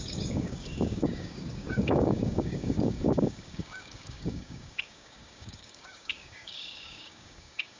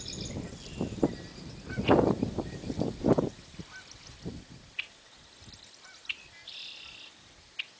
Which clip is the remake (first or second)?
first